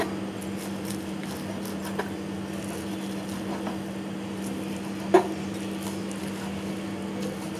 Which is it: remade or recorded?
recorded